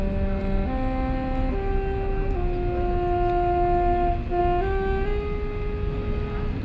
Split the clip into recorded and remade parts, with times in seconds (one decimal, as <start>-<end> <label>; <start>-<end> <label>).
0.0-6.6 recorded